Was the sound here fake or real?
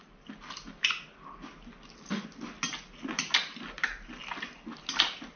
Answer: real